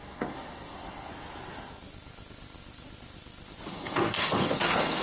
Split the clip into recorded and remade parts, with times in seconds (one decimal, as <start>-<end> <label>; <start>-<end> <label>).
0.0-1.1 remade; 1.1-3.7 recorded; 3.7-5.0 remade